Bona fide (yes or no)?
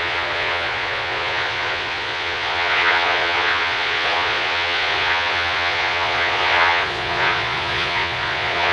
no